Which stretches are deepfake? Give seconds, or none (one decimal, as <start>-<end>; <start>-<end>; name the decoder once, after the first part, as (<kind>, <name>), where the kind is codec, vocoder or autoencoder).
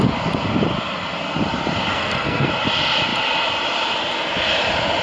1.9-2.5 (codec, SNAC)